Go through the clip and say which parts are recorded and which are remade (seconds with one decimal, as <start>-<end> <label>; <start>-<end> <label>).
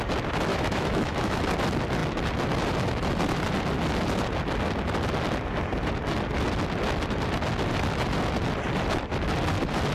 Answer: 0.0-0.5 recorded; 0.5-1.4 remade; 1.4-9.9 recorded